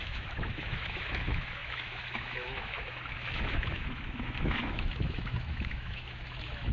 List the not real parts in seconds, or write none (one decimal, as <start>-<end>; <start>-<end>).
0.0-6.7